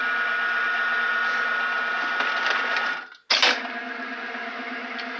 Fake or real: real